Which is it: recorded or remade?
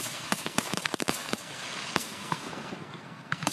remade